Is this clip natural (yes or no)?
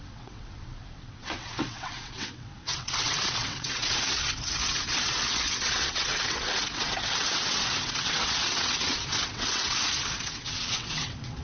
no